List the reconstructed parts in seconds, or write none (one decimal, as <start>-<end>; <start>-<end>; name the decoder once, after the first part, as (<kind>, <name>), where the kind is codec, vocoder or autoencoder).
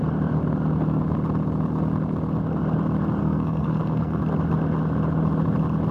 3.2-4.2 (codec, SNAC)